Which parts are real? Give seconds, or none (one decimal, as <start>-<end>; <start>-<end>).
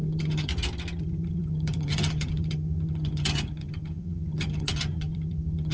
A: 0.5-1.0